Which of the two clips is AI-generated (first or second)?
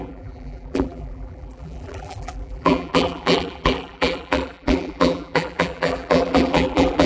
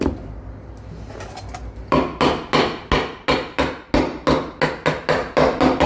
first